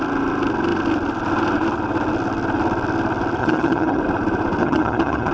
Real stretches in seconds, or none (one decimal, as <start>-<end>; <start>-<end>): 0.0-3.4; 4.0-4.6